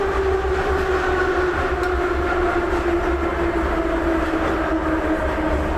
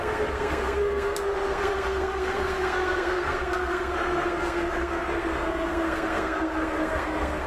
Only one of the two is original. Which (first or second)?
first